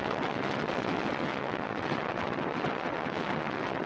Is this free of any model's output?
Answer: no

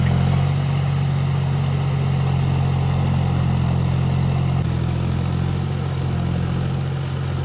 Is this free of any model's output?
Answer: yes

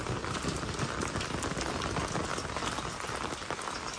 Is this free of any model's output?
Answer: yes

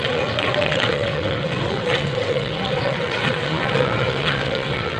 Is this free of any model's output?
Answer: no